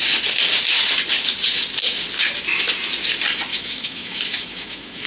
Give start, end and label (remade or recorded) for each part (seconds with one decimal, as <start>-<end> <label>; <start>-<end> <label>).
0.0-3.5 recorded; 3.5-5.1 remade